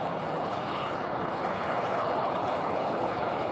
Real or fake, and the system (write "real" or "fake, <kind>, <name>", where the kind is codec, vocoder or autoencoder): fake, codec, HILCodec